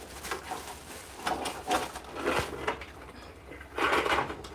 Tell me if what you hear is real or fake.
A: real